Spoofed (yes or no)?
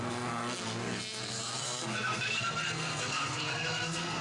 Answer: yes